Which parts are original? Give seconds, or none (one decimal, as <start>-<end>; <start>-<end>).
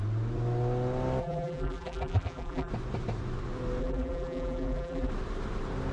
0.0-1.2; 2.7-3.8; 5.1-5.9